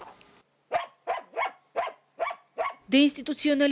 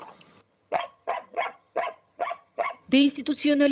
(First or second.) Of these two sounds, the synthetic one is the second